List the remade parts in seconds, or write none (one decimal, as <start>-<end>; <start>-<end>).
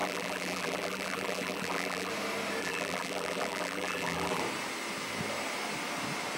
0.0-2.1; 2.6-4.4